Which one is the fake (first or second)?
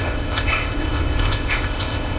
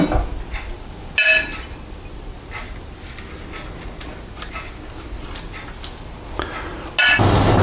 first